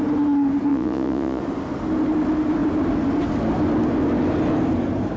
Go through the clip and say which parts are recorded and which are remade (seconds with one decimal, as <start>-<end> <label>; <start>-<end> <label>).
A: 0.0-0.7 recorded; 0.7-1.4 remade; 1.4-5.2 recorded